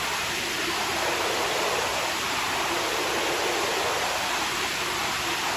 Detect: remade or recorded recorded